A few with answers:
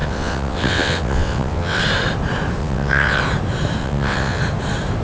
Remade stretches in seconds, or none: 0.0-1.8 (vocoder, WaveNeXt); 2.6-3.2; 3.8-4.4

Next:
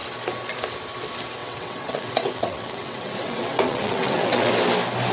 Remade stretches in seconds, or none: 1.4-4.5 (vocoder, WaveNeXt)

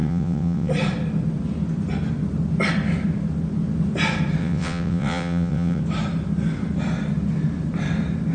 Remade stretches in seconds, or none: 0.0-0.7 (vocoder, WaveNeXt); 4.4-5.8

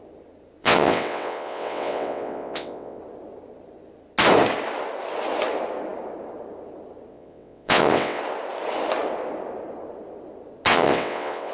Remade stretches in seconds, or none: 0.6-3.0 (vocoder, WaveNeXt); 7.1-8.2; 10.7-11.5

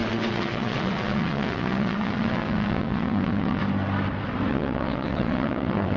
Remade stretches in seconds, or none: 0.0-3.6 (vocoder, WaveNeXt); 4.5-6.0

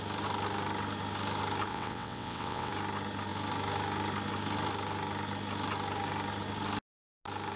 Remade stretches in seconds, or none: 1.7-2.7 (vocoder, WaveNeXt)

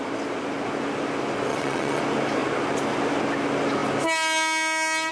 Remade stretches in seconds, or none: 1.5-2.0 (vocoder, WaveNeXt)

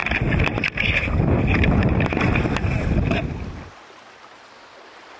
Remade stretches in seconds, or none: none